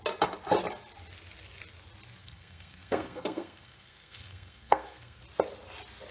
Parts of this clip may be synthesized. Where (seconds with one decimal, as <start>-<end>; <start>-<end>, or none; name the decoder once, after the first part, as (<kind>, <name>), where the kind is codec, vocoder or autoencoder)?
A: 2.2-5.2 (codec, SNAC)